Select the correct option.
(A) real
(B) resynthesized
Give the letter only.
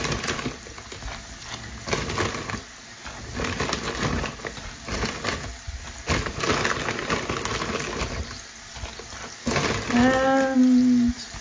A